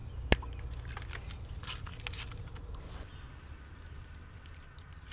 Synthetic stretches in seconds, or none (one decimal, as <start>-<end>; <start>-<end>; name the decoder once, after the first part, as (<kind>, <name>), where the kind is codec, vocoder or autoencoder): 0.9-1.9 (vocoder, BigVGAN v2); 2.5-5.1